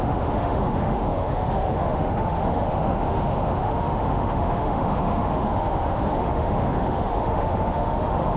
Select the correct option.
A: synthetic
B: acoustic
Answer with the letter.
A